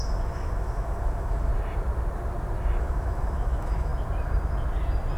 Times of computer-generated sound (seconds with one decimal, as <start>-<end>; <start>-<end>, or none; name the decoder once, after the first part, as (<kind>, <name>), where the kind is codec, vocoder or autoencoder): 0.0-1.5 (autoencoder, DAC-VAE); 2.8-3.9